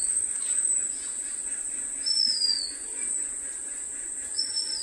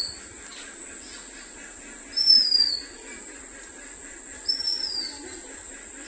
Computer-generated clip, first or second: first